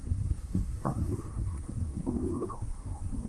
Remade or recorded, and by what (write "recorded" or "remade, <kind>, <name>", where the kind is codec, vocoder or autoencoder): remade, codec, SNAC